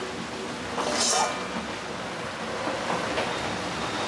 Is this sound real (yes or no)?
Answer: yes